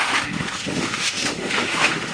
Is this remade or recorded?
remade